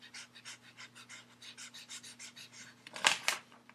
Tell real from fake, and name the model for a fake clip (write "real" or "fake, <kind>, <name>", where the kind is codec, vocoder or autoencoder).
real